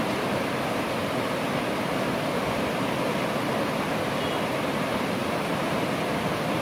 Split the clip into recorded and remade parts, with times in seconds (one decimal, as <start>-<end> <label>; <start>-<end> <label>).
0.0-6.6 recorded